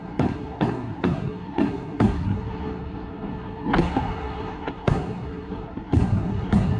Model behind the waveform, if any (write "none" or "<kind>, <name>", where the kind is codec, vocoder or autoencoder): codec, SNAC